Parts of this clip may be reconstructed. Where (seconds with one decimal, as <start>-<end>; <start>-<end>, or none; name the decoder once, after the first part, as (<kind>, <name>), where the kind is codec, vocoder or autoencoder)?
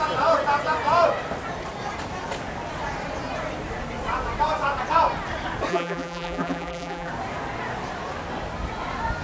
5.7-7.1 (vocoder, BigVGAN v2)